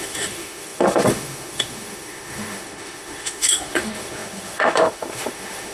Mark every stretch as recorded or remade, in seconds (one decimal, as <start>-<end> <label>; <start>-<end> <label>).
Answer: 0.0-5.7 remade